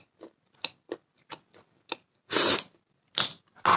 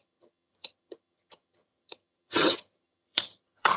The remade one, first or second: second